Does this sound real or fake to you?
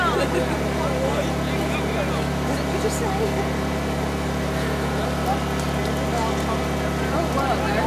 real